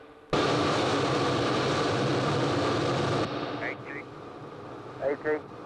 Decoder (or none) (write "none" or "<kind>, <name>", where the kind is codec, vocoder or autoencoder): none